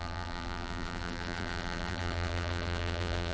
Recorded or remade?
remade